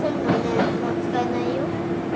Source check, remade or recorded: recorded